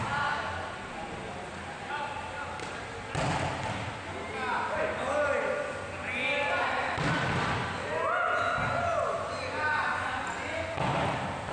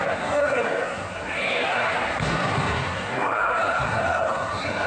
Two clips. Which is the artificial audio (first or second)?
second